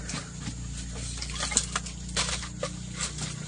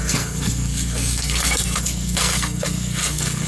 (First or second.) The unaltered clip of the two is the first